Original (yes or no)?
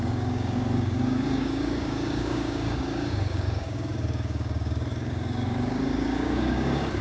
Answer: no